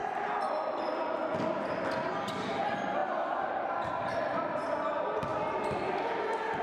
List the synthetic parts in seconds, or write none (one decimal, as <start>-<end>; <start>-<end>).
2.3-5.3; 6.1-6.6